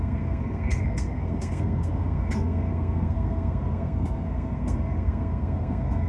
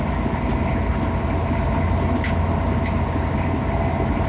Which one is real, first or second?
second